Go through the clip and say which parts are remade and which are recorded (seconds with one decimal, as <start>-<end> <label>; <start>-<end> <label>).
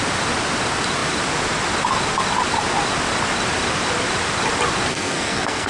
0.0-4.9 recorded; 4.9-5.7 remade